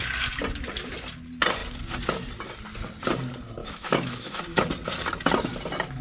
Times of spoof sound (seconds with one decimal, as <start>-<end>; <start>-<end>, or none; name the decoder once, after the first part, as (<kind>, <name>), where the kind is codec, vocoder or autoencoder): 3.6-4.4 (autoencoder, DAC-VAE)